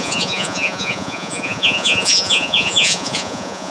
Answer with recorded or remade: remade